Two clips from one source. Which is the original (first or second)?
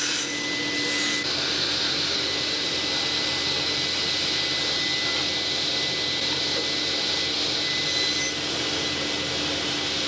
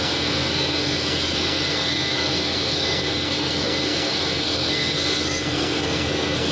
first